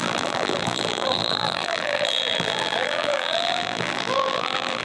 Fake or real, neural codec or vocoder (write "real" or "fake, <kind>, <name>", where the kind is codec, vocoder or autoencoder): fake, vocoder, BigVGAN v2